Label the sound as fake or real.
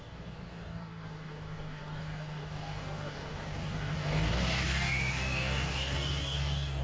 fake